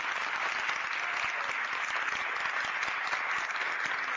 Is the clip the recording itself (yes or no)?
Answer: yes